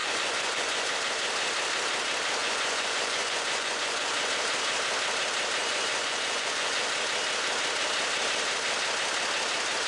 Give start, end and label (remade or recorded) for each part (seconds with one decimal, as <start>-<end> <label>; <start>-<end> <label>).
0.0-0.9 remade; 0.9-2.4 recorded; 2.4-4.3 remade; 4.3-5.6 recorded; 5.6-6.8 remade; 6.8-9.9 recorded